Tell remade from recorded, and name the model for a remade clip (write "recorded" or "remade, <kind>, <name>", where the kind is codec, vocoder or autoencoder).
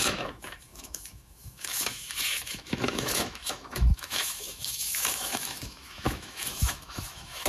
remade, autoencoder, DAC-VAE